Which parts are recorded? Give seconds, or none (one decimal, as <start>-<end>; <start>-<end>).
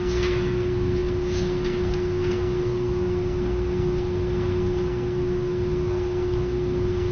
none